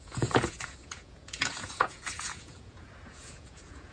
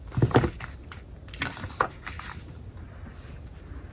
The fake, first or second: first